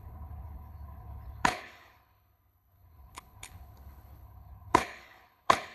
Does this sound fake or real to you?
fake